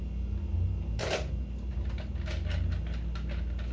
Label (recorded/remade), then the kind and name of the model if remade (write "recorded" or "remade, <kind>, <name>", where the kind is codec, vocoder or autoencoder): recorded